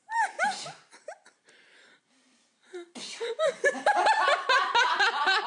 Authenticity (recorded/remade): remade